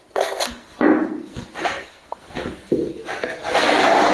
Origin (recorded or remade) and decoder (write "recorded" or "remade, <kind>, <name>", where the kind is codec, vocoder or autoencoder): remade, codec, SNAC